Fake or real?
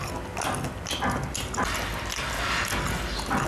real